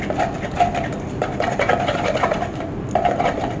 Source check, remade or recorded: recorded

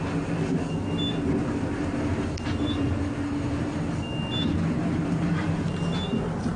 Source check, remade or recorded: recorded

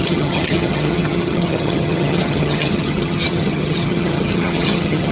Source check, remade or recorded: remade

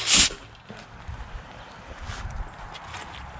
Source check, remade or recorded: recorded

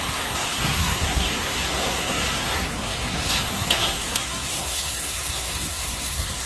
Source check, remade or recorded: remade